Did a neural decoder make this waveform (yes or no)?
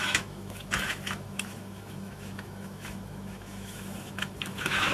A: yes